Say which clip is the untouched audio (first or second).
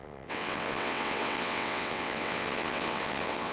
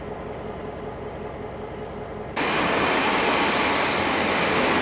second